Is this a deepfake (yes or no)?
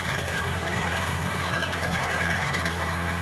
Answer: yes